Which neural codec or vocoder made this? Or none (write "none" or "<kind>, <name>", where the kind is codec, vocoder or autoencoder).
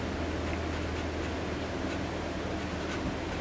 none